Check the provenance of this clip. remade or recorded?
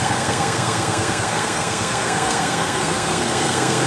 remade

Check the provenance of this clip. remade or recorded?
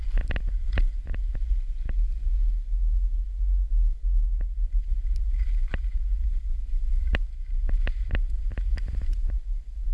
recorded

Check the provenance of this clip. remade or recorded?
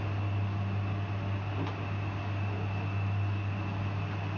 recorded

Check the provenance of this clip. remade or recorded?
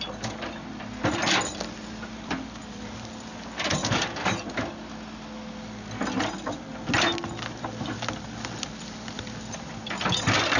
recorded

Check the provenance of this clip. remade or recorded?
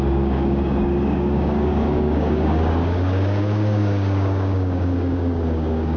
remade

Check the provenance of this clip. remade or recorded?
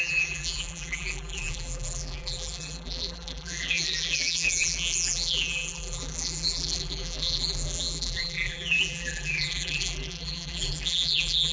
remade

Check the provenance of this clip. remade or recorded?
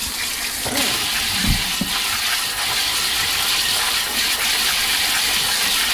remade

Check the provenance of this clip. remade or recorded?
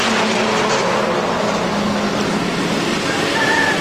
recorded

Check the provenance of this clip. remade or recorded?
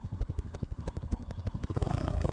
remade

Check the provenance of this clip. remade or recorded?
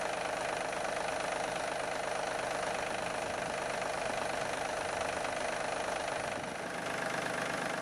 recorded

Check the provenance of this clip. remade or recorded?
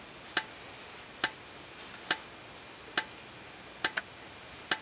recorded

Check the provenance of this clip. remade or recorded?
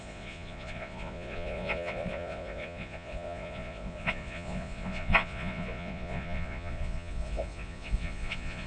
remade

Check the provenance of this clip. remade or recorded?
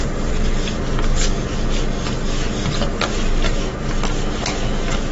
recorded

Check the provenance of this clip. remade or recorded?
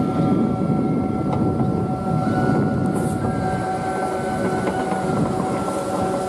recorded